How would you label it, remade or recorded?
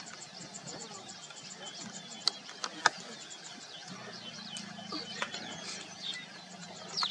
recorded